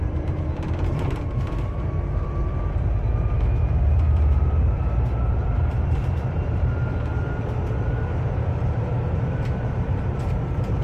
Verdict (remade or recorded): remade